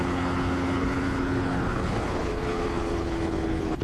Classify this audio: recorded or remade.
remade